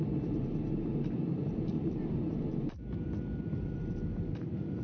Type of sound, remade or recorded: remade